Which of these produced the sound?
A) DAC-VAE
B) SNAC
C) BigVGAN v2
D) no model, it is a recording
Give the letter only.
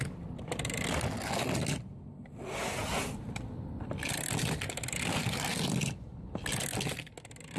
D